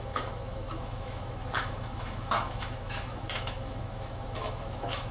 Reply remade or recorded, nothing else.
remade